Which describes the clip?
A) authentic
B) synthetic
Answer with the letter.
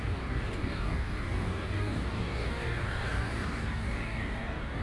B